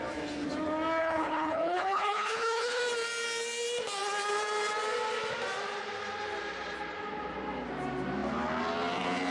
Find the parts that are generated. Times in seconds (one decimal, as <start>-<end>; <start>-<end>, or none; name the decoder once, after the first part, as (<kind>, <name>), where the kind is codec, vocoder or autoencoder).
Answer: 1.0-2.8 (codec, HILCodec)